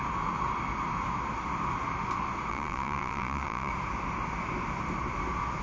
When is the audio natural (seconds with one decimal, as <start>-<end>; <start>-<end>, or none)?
0.0-2.5; 3.7-5.6